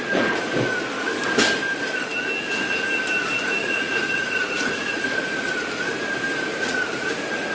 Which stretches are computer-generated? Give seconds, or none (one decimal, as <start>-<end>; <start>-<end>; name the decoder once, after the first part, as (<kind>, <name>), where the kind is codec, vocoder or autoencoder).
3.6-5.5 (vocoder, Vocos); 6.5-7.1